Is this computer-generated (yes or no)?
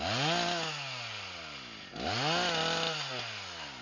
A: no